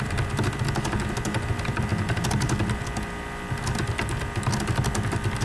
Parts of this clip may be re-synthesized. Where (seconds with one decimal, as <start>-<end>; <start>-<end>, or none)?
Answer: none